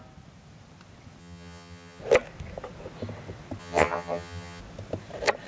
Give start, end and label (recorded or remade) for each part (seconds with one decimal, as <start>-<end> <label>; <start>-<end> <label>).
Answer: 0.0-1.2 recorded; 1.2-2.0 remade; 2.0-3.6 recorded; 3.6-4.6 remade; 4.6-5.5 recorded